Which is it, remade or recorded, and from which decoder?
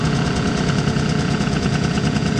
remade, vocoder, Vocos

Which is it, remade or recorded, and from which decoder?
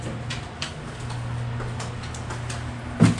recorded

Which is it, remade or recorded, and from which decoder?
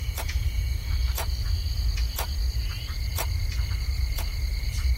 remade, vocoder, Vocos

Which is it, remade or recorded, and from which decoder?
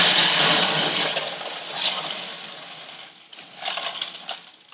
recorded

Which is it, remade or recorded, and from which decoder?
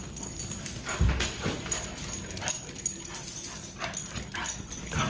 recorded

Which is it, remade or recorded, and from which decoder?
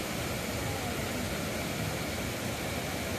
recorded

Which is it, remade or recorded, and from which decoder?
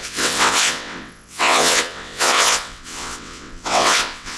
remade, vocoder, WaveNeXt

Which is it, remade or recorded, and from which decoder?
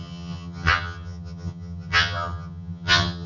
remade, vocoder, HiFi-GAN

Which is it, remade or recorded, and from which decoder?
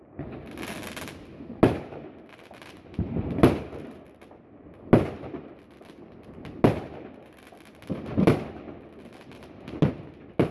recorded